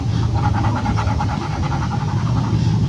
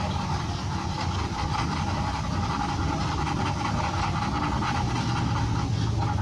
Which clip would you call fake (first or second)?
first